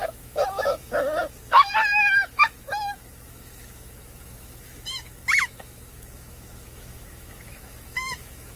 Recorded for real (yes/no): no